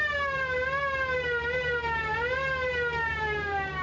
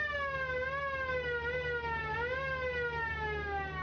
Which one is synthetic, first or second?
first